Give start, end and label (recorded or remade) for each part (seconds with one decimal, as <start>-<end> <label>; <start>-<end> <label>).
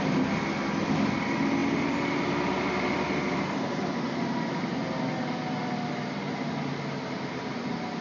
0.0-8.0 recorded